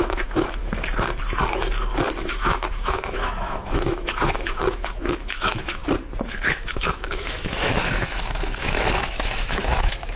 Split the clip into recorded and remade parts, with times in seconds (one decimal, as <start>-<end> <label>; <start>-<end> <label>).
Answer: 0.0-0.6 remade; 0.6-2.3 recorded; 2.3-5.8 remade; 5.8-6.3 recorded; 6.3-10.2 remade